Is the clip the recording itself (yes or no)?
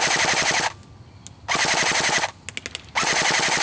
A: yes